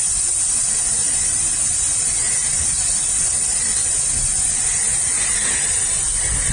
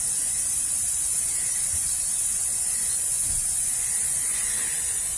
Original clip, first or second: first